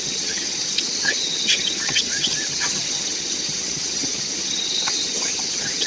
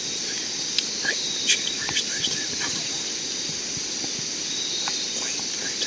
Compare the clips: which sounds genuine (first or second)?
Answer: second